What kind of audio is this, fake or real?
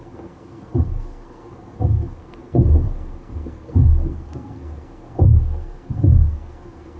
fake